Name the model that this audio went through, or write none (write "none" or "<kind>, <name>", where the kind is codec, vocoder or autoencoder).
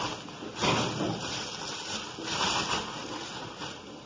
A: none